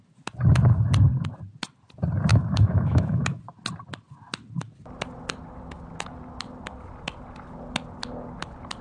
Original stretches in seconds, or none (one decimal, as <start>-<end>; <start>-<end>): 0.0-2.3; 3.4-8.8